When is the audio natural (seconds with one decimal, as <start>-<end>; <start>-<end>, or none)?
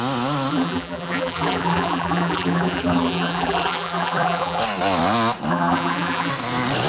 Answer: 0.0-0.5; 4.6-5.5; 6.3-6.9